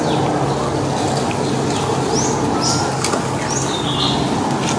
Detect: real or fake real